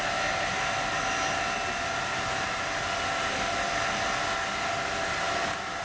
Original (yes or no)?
yes